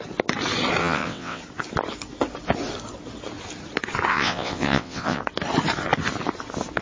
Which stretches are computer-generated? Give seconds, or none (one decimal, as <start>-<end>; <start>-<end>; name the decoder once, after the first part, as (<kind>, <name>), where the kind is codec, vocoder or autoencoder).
0.8-1.4 (vocoder, WaveNeXt); 4.1-5.2